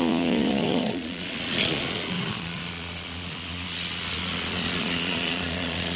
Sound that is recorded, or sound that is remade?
remade